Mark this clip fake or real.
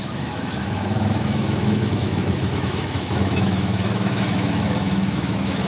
fake